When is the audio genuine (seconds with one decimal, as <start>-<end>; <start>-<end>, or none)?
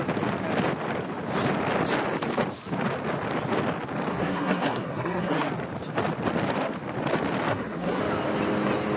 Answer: 0.0-4.1; 5.5-7.5; 8.0-9.0